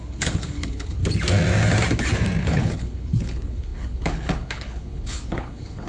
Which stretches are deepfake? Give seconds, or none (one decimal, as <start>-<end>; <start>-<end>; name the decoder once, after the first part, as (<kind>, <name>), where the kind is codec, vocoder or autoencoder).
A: 0.0-1.0 (codec, HILCodec); 2.4-5.9

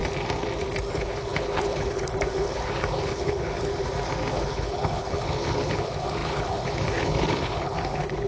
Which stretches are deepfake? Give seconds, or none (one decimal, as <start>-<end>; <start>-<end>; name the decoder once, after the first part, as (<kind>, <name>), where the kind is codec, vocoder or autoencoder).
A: 0.9-3.7 (codec, HILCodec); 4.3-8.3

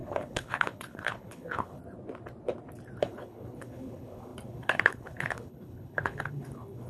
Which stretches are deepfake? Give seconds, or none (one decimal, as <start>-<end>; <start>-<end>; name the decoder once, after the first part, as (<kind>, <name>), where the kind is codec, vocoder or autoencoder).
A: 0.0-1.8 (codec, HILCodec); 3.0-6.9

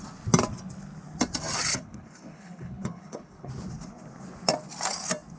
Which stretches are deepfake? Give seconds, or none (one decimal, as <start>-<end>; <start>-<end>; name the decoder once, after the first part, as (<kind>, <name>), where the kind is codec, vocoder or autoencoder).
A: 1.7-3.5 (codec, HILCodec)

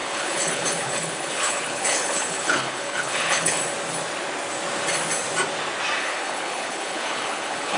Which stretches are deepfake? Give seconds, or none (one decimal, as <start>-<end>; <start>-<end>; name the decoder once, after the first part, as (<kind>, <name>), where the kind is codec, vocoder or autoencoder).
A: 0.0-3.6 (codec, HILCodec); 6.0-7.8

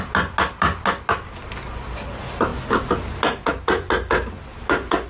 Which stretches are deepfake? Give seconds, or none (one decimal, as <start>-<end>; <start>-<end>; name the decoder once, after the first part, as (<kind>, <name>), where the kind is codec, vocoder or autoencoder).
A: none